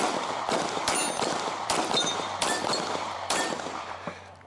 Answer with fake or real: fake